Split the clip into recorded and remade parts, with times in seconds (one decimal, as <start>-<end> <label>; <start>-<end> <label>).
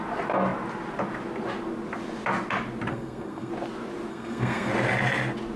0.0-2.9 recorded; 2.9-3.5 remade; 3.5-4.1 recorded; 4.1-4.7 remade; 4.7-5.6 recorded